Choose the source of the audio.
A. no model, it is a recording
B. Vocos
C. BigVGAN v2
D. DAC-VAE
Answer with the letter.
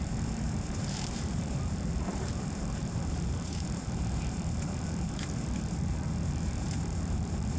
C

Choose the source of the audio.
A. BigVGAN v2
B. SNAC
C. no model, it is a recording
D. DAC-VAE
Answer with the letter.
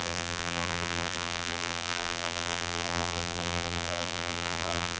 A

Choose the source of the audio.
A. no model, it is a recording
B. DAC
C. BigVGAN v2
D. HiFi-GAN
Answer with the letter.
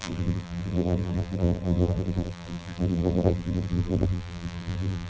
C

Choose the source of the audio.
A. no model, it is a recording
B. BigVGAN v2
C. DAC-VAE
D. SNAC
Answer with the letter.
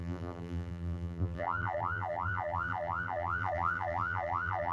B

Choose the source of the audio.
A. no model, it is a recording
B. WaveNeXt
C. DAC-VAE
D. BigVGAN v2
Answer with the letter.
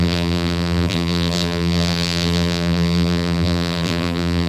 D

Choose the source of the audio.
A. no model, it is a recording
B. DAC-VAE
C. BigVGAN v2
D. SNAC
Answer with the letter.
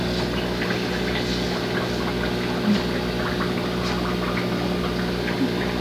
A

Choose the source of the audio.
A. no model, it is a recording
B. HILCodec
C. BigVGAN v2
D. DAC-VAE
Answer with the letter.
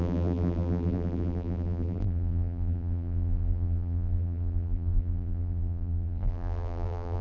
C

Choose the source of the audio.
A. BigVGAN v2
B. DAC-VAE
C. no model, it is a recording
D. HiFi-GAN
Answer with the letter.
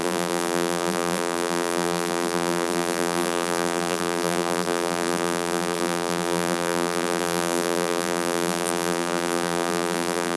A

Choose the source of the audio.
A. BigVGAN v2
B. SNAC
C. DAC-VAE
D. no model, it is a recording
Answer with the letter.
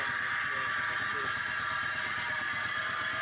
D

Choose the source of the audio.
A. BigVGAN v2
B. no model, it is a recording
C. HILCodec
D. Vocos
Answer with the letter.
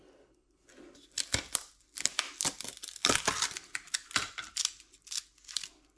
B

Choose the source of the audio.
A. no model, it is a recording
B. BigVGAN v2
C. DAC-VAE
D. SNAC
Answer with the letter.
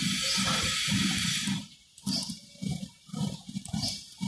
B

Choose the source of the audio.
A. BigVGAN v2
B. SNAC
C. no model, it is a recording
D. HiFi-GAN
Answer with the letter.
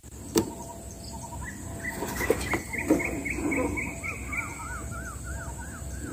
C